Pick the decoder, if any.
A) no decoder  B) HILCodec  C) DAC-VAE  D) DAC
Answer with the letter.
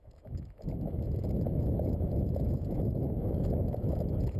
C